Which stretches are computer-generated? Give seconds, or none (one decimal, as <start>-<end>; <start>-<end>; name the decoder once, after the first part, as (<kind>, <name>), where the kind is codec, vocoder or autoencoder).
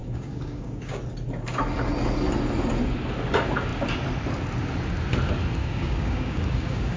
0.0-1.0 (codec, DAC); 5.6-7.0